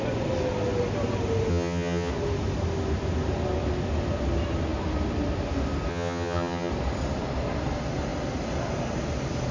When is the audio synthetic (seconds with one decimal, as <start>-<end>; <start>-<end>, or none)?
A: 1.5-2.1; 5.9-6.7